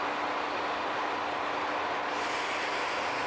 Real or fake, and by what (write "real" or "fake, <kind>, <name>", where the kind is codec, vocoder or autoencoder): real